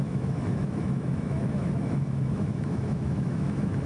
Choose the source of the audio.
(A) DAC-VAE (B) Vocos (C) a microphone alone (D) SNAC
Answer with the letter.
A